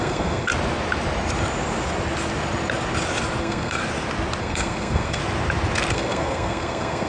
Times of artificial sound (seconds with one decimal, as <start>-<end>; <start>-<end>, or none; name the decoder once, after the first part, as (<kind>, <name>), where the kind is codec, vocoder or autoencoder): 0.0-0.5 (codec, SNAC); 3.4-3.8; 4.4-5.2; 5.9-7.1